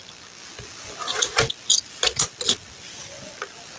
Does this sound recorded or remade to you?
recorded